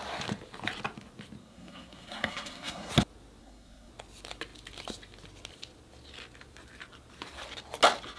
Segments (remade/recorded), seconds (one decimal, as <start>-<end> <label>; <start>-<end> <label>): 0.0-1.4 recorded; 1.4-2.9 remade; 2.9-3.4 recorded; 3.4-3.9 remade; 3.9-8.2 recorded